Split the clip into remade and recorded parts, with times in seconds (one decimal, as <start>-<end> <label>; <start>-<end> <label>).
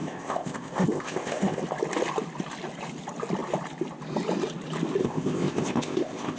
0.0-1.6 remade; 1.6-5.0 recorded; 5.0-6.4 remade